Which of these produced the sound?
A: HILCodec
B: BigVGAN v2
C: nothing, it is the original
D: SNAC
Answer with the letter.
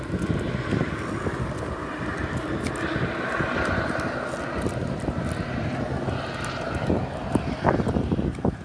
C